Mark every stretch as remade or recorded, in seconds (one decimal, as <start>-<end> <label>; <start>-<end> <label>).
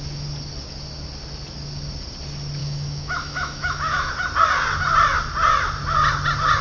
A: 0.0-2.6 recorded; 2.6-4.1 remade; 4.1-6.6 recorded